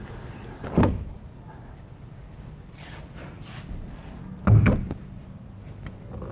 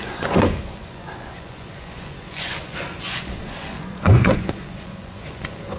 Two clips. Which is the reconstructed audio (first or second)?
second